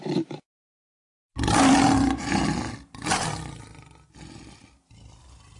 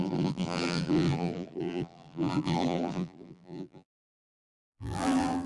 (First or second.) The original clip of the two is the first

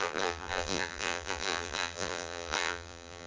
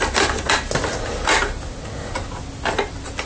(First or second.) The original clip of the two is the second